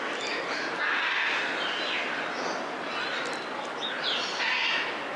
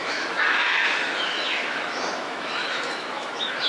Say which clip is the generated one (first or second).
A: second